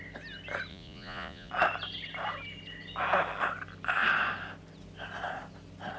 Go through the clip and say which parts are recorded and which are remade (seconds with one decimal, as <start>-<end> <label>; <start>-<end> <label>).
0.0-0.7 recorded; 0.7-1.5 remade; 1.5-6.0 recorded